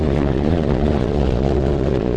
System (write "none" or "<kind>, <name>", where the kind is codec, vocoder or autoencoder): vocoder, Vocos